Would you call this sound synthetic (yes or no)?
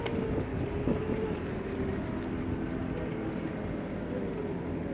no